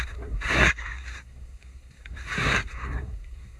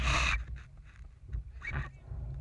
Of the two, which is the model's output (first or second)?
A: first